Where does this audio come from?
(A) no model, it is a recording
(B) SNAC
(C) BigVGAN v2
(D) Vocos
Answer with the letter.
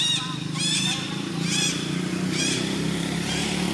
A